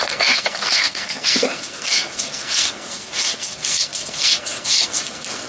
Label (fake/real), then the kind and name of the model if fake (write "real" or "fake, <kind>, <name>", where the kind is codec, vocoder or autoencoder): fake, codec, SNAC